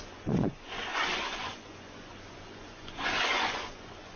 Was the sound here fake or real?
fake